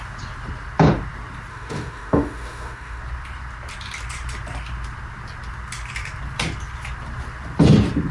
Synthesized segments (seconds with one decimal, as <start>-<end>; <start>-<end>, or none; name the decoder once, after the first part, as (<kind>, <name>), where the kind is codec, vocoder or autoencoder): 1.5-3.0 (autoencoder, DAC-VAE)